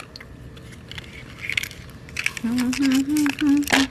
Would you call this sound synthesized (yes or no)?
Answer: no